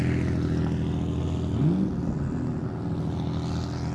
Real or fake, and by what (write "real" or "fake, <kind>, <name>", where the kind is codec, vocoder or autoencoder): real